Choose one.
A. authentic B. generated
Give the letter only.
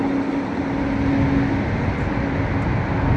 A